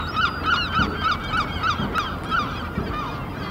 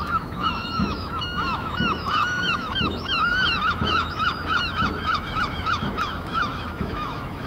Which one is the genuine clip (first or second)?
first